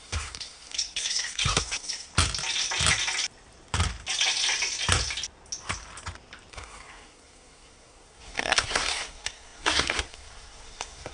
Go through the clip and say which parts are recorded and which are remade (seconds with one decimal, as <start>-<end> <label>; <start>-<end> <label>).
0.0-2.1 remade; 2.1-6.5 recorded; 6.5-11.1 remade